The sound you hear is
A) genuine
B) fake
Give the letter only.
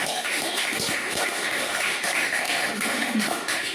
B